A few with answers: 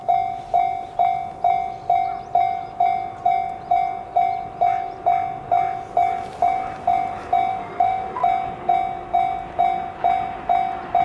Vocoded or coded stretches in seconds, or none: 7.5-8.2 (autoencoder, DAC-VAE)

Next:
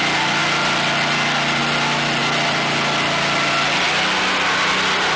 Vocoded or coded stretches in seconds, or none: none

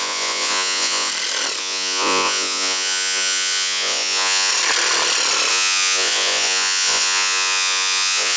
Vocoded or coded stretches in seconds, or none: 0.0-1.1 (vocoder, Vocos); 1.6-4.5; 5.5-8.4

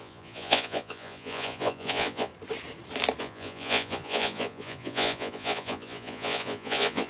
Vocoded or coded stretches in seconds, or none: 0.0-2.3 (vocoder, Vocos); 3.2-7.1

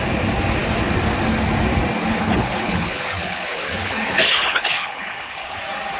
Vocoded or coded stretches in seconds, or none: 2.1-5.6 (codec, HILCodec)

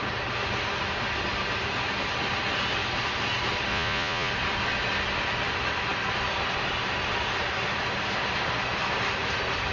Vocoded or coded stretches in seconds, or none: 3.7-4.3 (vocoder, Vocos)